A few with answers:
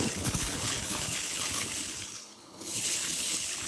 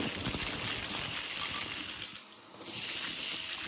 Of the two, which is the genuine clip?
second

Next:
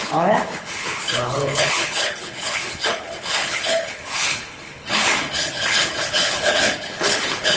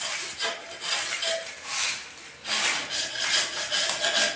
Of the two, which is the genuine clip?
second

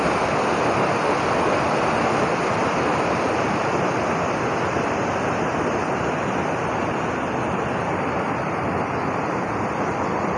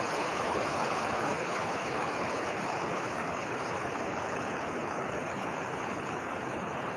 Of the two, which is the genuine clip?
first